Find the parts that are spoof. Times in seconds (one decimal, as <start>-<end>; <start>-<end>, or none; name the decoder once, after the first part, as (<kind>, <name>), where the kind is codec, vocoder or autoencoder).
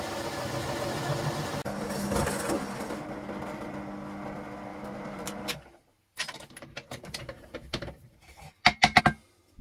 4.7-9.0 (vocoder, BigVGAN v2)